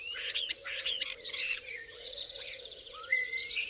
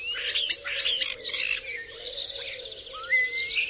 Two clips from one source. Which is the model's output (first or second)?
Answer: first